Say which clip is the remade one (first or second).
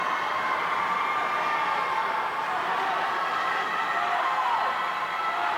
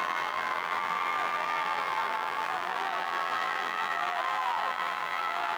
second